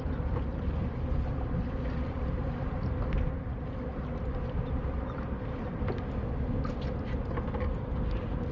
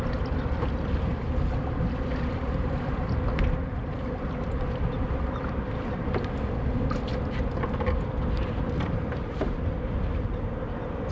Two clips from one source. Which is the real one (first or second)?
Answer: first